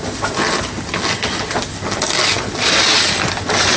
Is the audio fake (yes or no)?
no